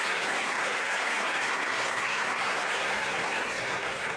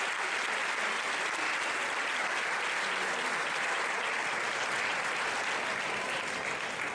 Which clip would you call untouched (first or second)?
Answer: second